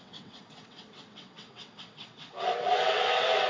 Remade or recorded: remade